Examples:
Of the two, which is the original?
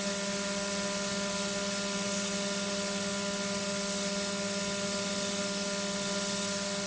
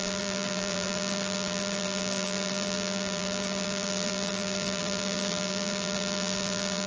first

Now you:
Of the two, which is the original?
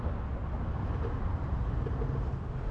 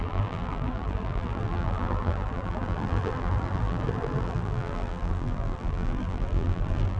first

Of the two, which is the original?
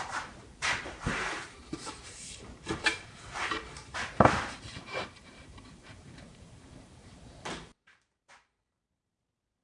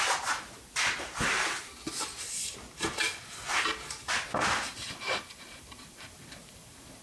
second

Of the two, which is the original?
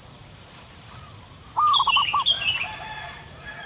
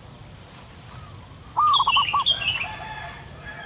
second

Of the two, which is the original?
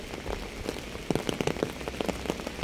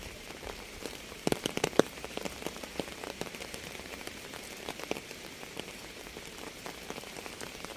first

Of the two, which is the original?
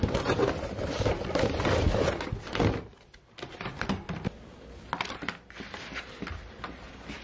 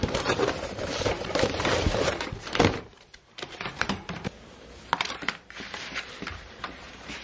first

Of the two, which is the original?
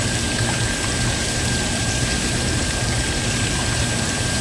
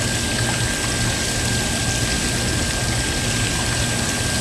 second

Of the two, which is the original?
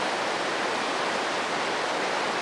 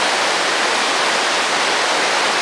second